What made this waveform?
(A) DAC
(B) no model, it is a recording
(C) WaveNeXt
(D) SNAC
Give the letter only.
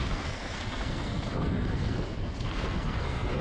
D